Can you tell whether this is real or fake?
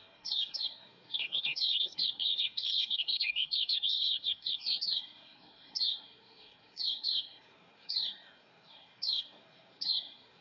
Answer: fake